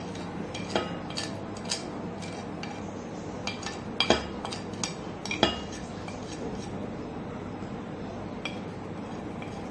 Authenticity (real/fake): real